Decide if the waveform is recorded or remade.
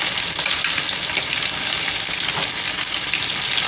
recorded